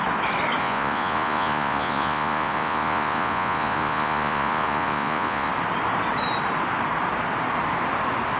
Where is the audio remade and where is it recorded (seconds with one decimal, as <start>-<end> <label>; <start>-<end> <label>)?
0.0-0.6 recorded; 0.6-5.5 remade; 5.5-8.4 recorded